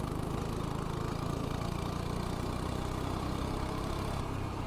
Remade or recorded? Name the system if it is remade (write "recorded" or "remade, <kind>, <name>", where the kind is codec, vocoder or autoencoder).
recorded